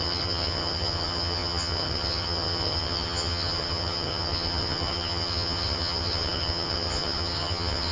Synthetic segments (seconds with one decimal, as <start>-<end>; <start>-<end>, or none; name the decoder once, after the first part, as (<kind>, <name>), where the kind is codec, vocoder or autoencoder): 0.0-7.9 (vocoder, HiFi-GAN)